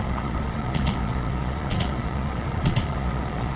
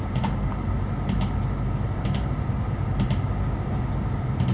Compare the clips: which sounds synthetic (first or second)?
first